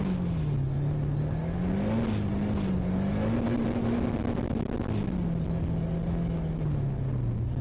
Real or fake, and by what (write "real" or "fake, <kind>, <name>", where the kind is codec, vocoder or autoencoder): real